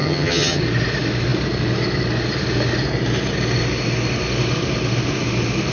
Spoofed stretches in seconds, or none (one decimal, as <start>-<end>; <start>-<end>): 0.0-0.6